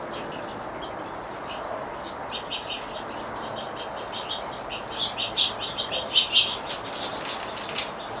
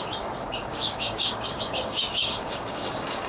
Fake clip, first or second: second